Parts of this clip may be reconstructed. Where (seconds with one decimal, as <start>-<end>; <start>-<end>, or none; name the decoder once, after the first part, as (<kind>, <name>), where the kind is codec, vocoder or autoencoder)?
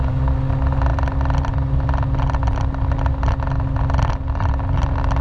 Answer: none